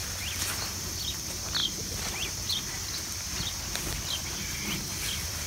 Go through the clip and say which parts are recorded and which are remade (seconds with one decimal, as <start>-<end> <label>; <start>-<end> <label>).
0.0-5.5 recorded